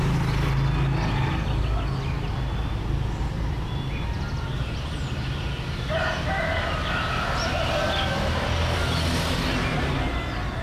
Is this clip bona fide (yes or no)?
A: yes